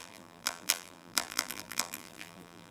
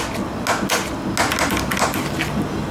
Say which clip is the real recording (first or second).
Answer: second